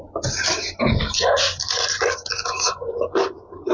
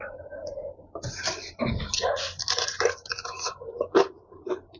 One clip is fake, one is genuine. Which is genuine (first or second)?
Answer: first